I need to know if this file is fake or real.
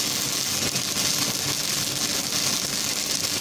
real